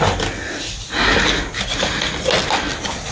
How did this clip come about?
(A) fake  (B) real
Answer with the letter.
B